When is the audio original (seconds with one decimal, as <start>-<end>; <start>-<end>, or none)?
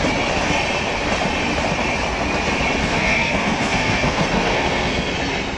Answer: 0.0-2.8; 5.1-5.6